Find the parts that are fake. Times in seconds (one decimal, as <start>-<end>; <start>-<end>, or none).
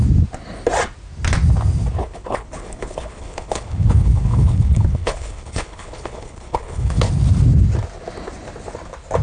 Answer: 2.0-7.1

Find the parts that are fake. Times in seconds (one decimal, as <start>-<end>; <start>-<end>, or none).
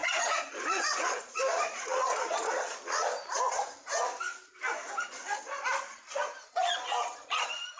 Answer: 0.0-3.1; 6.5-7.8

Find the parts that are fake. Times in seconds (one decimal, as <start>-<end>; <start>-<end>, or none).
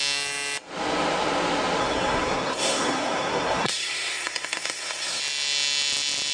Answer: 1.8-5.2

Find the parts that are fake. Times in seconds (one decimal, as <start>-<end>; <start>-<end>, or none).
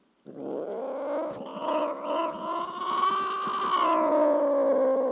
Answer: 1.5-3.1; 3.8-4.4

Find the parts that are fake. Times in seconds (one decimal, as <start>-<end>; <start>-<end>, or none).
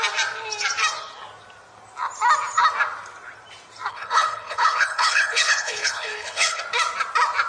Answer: 3.9-6.6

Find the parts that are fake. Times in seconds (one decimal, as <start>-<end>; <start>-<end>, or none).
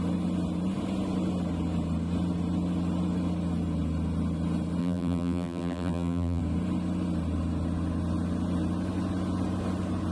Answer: 4.8-6.4